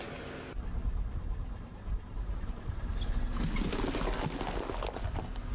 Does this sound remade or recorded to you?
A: recorded